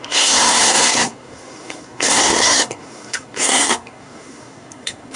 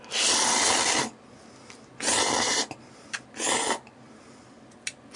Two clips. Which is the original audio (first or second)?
second